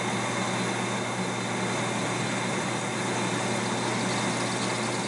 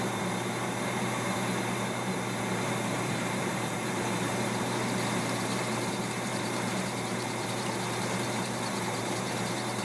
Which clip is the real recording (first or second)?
first